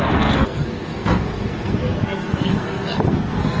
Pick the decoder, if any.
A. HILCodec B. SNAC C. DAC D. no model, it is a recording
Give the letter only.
B